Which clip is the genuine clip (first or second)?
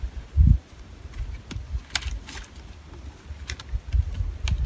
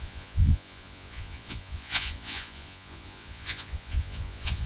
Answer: first